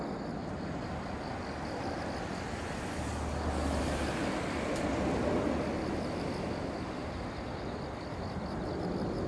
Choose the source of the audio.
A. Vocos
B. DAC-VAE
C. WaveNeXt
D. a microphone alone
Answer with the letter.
D